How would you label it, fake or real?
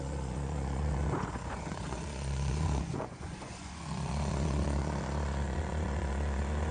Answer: fake